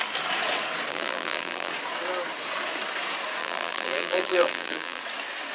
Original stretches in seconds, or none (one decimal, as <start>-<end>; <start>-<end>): 0.0-0.9; 1.7-3.4; 5.0-5.5